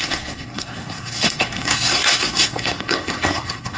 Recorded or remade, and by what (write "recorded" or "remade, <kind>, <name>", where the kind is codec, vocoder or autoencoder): remade, codec, SNAC